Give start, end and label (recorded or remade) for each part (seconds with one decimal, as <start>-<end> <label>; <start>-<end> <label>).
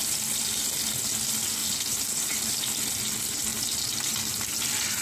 0.0-1.6 recorded; 1.6-2.5 remade; 2.5-3.5 recorded; 3.5-4.5 remade; 4.5-5.0 recorded